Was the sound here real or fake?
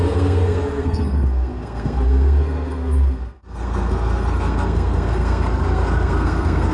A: fake